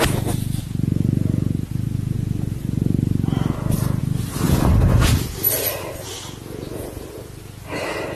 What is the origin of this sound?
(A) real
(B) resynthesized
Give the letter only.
A